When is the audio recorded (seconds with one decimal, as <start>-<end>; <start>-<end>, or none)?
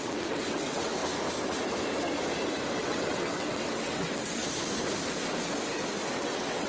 1.0-2.7; 4.4-6.1